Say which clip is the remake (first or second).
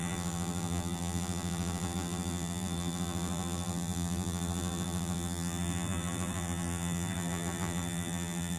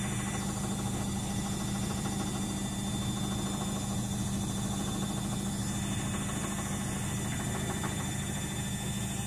first